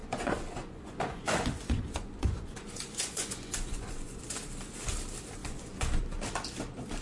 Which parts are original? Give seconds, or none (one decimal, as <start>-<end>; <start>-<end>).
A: 4.2-5.4; 6.0-7.0